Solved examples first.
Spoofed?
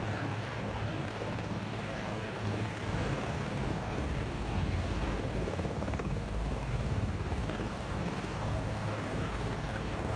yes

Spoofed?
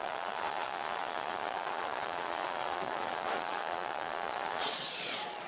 yes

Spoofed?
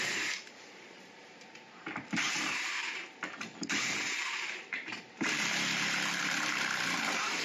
yes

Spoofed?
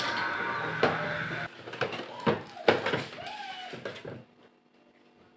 no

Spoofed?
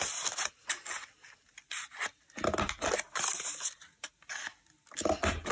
no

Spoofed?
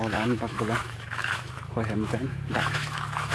yes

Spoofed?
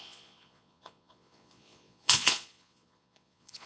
yes